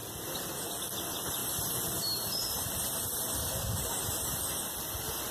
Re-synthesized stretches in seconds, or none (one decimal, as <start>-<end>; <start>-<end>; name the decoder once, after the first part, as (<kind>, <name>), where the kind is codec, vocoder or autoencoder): none